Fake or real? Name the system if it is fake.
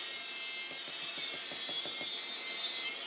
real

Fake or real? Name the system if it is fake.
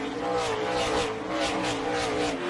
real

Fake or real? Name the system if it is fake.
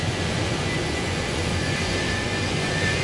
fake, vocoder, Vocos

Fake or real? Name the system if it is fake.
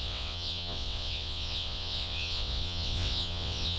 fake, vocoder, WaveNeXt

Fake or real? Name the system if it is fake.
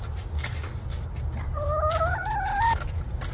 real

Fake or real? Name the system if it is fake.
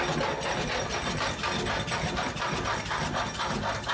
real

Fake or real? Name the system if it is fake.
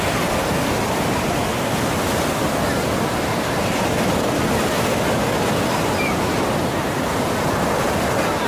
real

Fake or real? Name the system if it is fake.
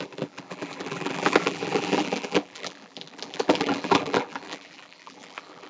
fake, vocoder, BigVGAN v2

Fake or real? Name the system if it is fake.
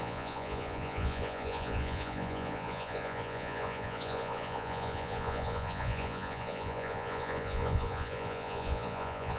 fake, vocoder, Vocos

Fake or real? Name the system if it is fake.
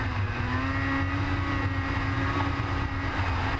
real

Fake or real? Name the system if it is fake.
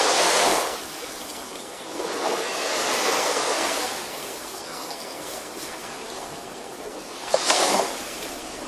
fake, codec, SNAC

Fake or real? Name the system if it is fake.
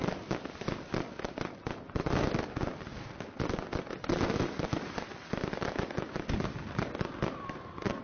real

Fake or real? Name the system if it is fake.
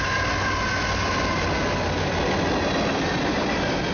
real